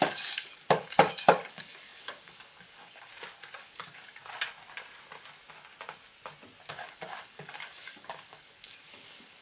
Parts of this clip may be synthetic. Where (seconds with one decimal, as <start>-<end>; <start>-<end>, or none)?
0.0-3.1; 3.6-4.2; 6.7-9.4